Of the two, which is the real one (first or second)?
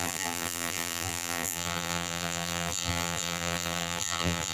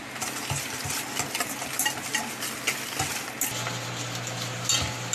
second